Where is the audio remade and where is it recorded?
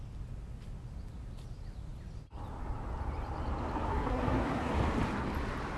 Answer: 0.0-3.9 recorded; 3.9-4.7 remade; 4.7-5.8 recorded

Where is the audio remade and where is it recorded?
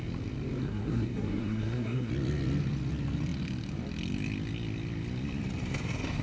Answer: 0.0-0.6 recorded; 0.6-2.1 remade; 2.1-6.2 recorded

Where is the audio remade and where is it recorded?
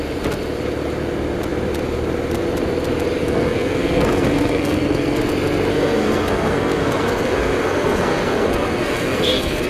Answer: 0.0-3.2 recorded; 3.2-5.2 remade; 5.2-5.7 recorded; 5.7-9.7 remade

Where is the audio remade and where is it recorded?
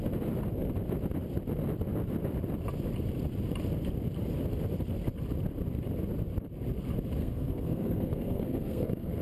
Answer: 0.0-7.2 recorded; 7.2-9.2 remade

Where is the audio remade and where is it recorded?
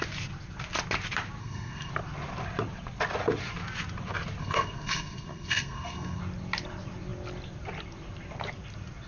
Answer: 0.0-1.4 recorded; 1.4-1.9 remade; 1.9-4.4 recorded; 4.4-6.2 remade; 6.2-9.1 recorded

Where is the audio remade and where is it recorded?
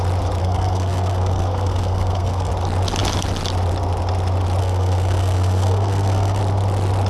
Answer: 0.0-0.4 recorded; 0.4-2.5 remade; 2.5-4.6 recorded; 4.6-6.4 remade; 6.4-7.1 recorded